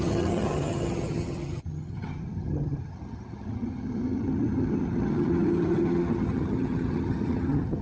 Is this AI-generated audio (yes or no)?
yes